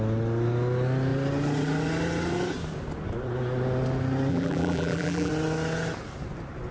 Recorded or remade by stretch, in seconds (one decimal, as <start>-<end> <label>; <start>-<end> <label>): 0.0-4.3 recorded; 4.3-5.3 remade; 5.3-6.7 recorded